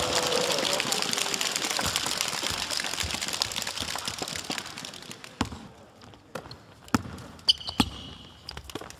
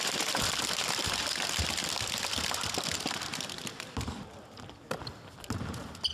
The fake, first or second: second